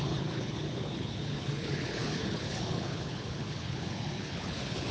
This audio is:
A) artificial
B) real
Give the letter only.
A